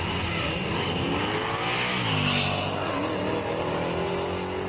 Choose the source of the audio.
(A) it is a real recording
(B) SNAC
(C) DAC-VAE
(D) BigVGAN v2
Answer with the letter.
A